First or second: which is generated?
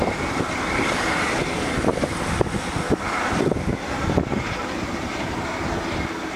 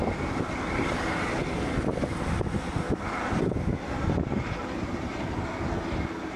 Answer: first